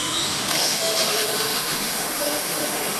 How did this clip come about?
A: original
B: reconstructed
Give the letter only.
B